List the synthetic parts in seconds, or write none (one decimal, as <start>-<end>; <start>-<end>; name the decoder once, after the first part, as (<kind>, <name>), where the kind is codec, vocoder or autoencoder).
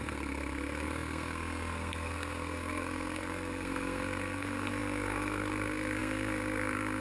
0.0-7.0 (codec, SNAC)